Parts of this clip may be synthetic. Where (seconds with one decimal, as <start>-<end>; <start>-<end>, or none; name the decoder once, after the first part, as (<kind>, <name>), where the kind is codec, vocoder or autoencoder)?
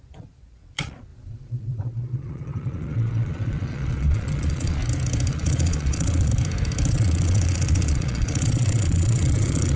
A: 0.0-4.8 (vocoder, Vocos); 5.3-6.3; 6.9-9.8